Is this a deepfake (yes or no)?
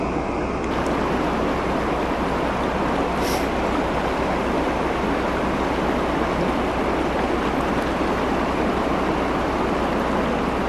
no